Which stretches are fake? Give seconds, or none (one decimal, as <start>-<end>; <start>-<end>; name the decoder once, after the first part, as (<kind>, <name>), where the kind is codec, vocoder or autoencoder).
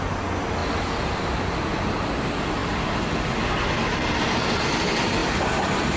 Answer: none